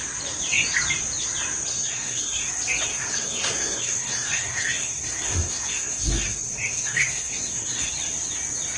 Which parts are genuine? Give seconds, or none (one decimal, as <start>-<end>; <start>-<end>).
0.0-1.7; 2.5-2.9; 7.9-8.8